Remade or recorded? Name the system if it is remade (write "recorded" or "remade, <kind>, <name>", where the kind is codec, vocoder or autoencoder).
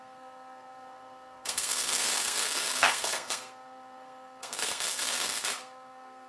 remade, codec, SNAC